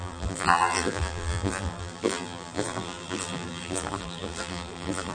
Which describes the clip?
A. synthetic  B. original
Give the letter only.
A